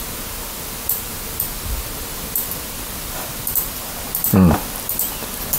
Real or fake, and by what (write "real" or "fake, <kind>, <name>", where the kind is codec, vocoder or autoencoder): fake, vocoder, BigVGAN v2